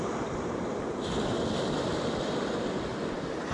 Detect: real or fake real